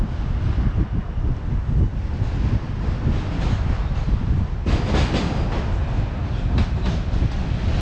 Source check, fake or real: real